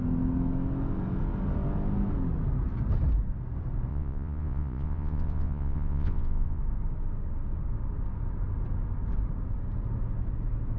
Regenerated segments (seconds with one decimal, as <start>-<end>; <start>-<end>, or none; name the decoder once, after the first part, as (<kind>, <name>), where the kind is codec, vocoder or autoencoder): 3.9-6.6 (vocoder, Vocos)